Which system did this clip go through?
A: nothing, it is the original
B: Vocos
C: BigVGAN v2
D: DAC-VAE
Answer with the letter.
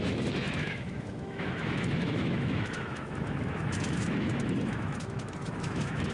D